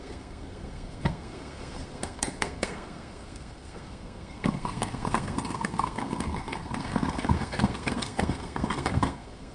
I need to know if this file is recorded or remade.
remade